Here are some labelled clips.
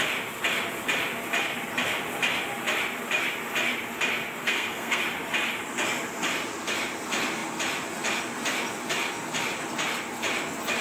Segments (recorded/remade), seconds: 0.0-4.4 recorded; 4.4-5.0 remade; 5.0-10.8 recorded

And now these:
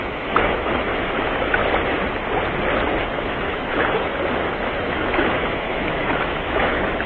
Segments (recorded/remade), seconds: 0.0-1.6 remade; 1.6-3.0 recorded; 3.0-4.1 remade; 4.1-4.8 recorded; 4.8-7.1 remade

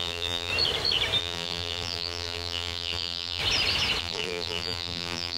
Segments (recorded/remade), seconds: 0.0-0.5 remade; 0.5-1.2 recorded; 1.2-3.4 remade; 3.4-4.0 recorded; 4.0-5.4 remade

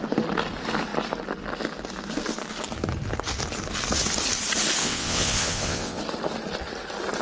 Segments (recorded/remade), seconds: 0.0-4.8 recorded; 4.8-6.0 remade; 6.0-7.2 recorded

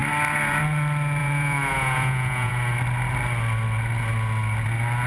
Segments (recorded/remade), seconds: 0.0-1.2 recorded; 1.2-2.5 remade; 2.5-5.1 recorded

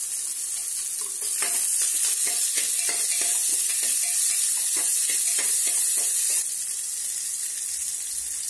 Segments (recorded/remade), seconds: 0.0-8.5 recorded

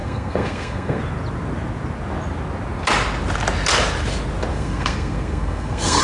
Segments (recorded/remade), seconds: 0.0-1.0 remade; 1.0-4.5 recorded; 4.5-6.0 remade